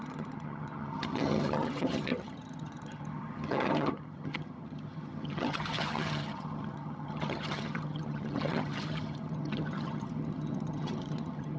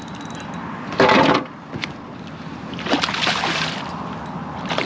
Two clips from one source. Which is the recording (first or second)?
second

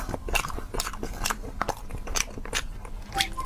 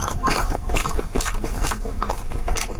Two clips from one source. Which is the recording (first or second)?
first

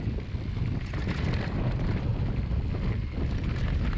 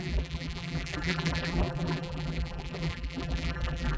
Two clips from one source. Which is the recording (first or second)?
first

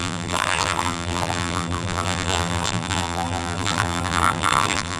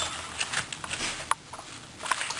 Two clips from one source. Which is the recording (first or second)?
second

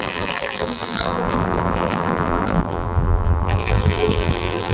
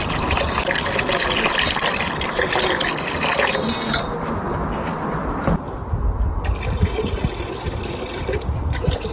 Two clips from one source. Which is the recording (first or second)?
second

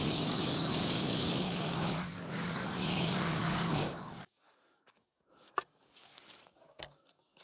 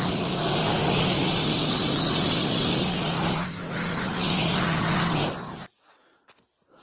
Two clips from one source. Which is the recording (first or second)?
second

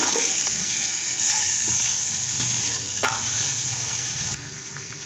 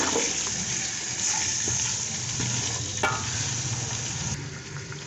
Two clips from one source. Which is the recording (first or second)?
second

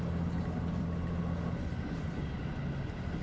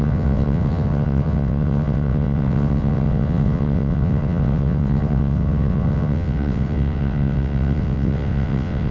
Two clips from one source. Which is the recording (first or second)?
first